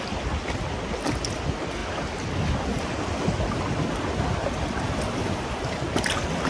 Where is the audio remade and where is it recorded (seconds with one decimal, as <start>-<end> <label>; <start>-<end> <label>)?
0.0-6.5 recorded